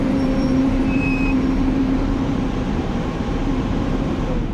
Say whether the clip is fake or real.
fake